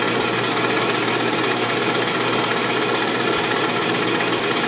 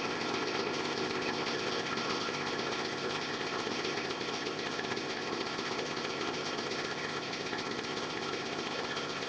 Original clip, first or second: first